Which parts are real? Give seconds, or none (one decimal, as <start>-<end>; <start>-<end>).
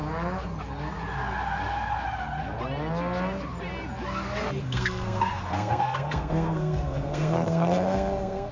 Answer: 0.0-4.6